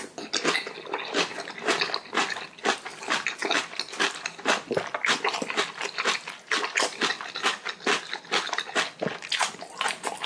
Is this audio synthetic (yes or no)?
no